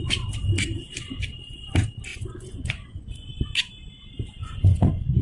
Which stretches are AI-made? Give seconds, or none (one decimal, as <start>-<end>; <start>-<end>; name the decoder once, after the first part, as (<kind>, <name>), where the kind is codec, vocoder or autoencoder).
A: 2.1-3.3 (vocoder, Vocos); 4.4-5.2